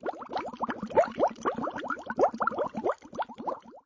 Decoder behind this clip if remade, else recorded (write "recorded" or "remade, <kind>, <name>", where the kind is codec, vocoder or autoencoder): recorded